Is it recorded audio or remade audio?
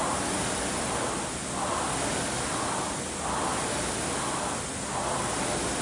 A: recorded